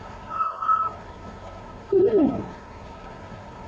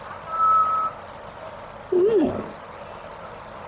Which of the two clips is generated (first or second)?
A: first